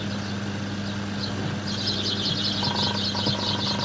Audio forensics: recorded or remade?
recorded